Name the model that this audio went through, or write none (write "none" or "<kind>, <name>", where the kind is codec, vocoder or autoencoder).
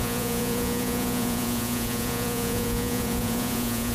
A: vocoder, Vocos